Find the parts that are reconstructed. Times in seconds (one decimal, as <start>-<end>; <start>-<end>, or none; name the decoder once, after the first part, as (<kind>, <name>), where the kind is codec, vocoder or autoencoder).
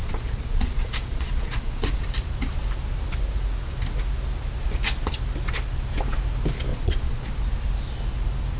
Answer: 0.0-1.9 (vocoder, Vocos); 6.7-7.3